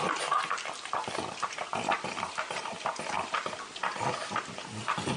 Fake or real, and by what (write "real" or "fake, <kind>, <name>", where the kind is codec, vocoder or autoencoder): real